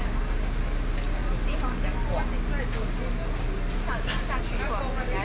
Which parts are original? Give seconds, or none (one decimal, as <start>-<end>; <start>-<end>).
0.0-5.2